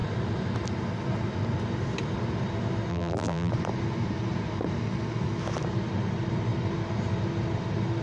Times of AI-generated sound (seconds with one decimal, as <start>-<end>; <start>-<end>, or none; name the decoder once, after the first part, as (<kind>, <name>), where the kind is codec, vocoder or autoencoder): 2.9-3.5 (vocoder, BigVGAN v2)